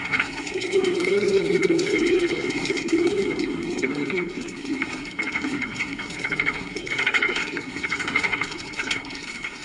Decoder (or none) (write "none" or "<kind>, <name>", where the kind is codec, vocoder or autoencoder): codec, SNAC